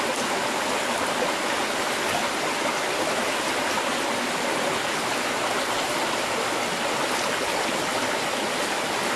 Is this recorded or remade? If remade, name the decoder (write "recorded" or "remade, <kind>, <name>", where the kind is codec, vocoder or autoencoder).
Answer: recorded